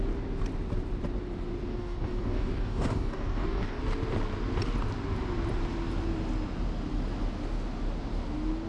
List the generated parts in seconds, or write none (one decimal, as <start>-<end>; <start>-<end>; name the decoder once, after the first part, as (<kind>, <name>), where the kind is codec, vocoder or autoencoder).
1.7-3.8 (codec, DAC)